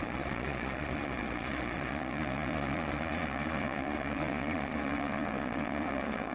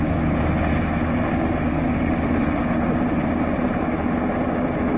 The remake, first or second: first